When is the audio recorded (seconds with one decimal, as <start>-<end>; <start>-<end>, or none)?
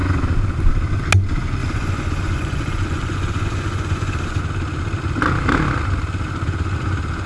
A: 0.0-1.6; 4.4-7.3